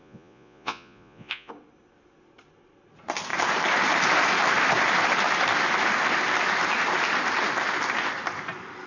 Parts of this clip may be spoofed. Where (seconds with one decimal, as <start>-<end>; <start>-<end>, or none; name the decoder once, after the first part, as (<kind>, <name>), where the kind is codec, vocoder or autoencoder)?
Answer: 0.0-1.5 (vocoder, Vocos)